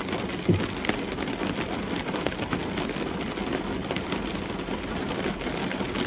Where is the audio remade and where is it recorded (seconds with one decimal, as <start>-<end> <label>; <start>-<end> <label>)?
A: 0.0-6.1 recorded